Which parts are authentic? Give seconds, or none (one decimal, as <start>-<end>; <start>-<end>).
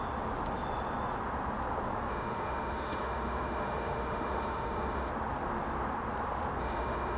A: 0.0-2.1; 5.1-6.6